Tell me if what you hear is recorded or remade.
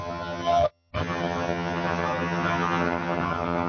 remade